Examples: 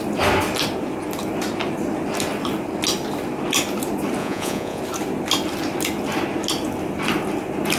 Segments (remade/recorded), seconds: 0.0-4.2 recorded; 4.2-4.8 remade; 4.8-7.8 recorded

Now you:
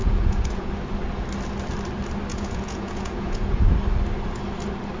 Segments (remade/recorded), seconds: 0.0-0.7 remade; 0.7-2.3 recorded; 2.3-3.6 remade; 3.6-5.0 recorded

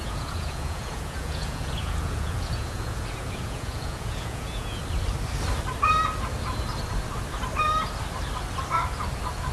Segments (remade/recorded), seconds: 0.0-4.8 remade; 4.8-9.5 recorded

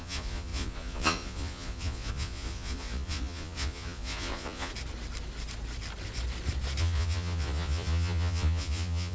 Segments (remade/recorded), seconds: 0.0-4.7 remade; 4.7-6.8 recorded; 6.8-9.1 remade

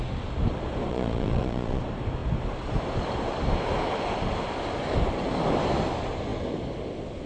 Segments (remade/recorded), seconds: 0.0-0.9 recorded; 0.9-1.8 remade; 1.8-7.3 recorded

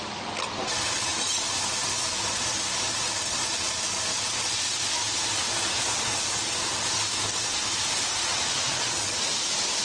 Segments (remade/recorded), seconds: 0.0-8.3 recorded; 8.3-9.1 remade; 9.1-9.8 recorded

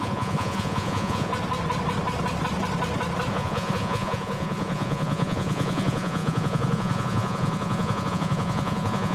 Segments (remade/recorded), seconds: 0.0-1.3 remade; 1.3-3.3 recorded; 3.3-9.1 remade

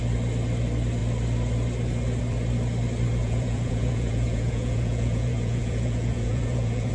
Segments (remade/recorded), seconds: 0.0-3.2 recorded; 3.2-6.9 remade